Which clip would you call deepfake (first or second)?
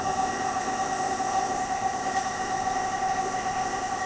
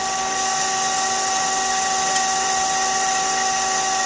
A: first